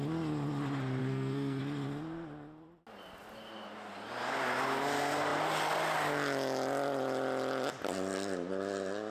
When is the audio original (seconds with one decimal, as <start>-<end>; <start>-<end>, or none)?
0.0-1.0; 1.6-9.1